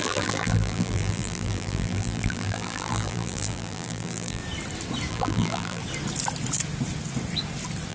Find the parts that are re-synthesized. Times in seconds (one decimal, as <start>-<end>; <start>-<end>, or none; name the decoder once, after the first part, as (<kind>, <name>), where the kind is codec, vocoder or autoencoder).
0.0-4.4 (vocoder, BigVGAN v2); 5.1-5.8